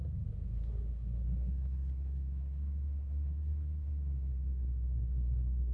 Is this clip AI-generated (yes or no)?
yes